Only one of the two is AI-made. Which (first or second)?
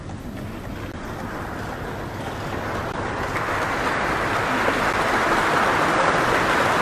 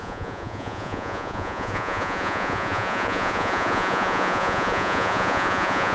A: second